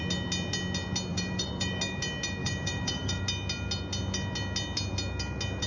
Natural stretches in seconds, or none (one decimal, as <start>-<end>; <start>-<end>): 0.0-1.1; 1.8-2.4; 3.2-5.7